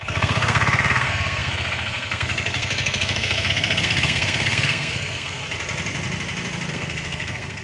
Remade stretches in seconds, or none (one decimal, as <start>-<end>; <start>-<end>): 0.0-5.4; 6.7-7.6